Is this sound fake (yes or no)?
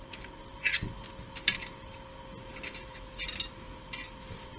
no